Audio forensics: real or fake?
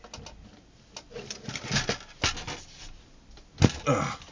real